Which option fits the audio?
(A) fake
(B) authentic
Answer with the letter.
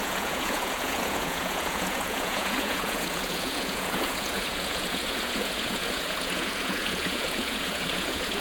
A